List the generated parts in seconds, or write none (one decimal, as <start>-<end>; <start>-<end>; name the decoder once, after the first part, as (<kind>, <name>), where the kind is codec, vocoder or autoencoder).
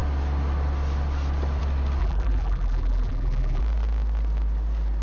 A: 2.0-3.6 (vocoder, BigVGAN v2)